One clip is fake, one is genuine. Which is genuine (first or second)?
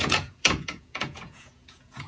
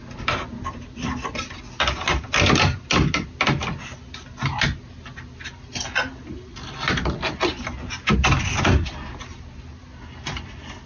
second